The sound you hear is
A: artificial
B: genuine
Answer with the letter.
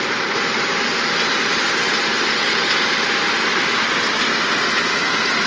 B